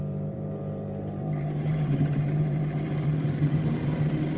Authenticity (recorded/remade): remade